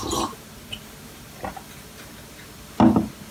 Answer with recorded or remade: recorded